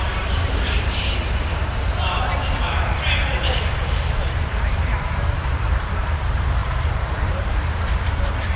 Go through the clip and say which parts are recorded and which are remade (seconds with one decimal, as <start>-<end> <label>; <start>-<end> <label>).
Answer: 0.0-8.6 remade